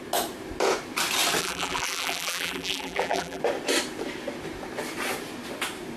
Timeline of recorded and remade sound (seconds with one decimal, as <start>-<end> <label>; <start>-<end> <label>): 0.0-1.4 recorded; 1.4-3.4 remade; 3.4-6.0 recorded